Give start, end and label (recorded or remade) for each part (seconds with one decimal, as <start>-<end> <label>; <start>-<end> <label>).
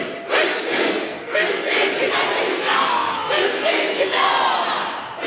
0.0-0.5 recorded; 0.5-1.9 remade; 1.9-2.5 recorded; 2.5-4.3 remade; 4.3-5.3 recorded